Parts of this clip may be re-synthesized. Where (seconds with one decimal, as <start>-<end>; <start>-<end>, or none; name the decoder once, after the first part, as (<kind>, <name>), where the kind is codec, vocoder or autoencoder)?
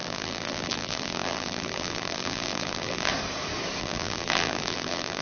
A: 0.0-3.1 (vocoder, BigVGAN v2); 3.8-5.2